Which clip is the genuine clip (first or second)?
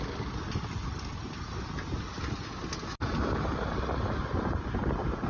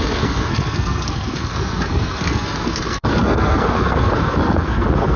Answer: first